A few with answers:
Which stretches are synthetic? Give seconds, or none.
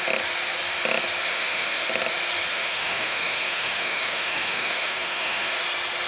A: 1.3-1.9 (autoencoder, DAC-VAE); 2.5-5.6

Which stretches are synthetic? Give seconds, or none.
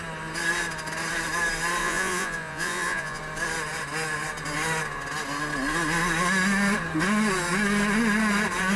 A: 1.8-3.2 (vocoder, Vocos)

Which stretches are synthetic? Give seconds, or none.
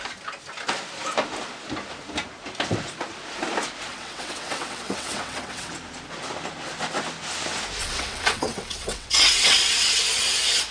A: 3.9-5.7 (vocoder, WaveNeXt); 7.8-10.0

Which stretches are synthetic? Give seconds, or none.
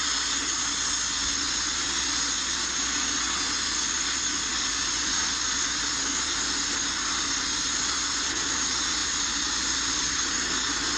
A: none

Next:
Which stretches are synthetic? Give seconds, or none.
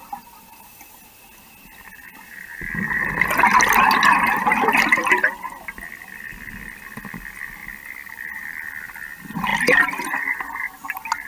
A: 7.6-8.8 (vocoder, BigVGAN v2)